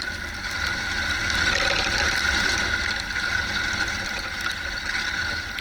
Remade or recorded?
recorded